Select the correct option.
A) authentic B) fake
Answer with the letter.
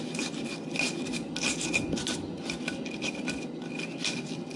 A